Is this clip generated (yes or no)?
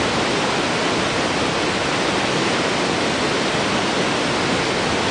no